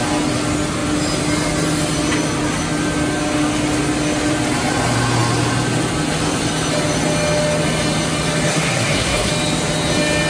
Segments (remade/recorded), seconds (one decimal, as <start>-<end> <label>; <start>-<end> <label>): 0.0-8.5 recorded; 8.5-9.3 remade; 9.3-10.3 recorded